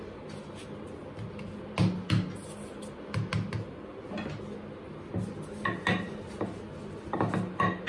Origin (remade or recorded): recorded